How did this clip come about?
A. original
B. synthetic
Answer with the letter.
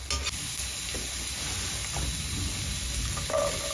A